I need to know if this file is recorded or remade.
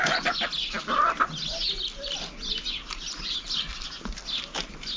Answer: recorded